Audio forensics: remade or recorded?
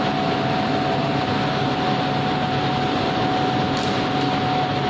recorded